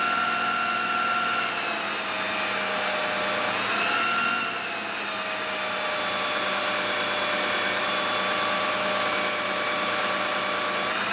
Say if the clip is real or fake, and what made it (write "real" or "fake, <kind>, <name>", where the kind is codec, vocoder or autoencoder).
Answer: real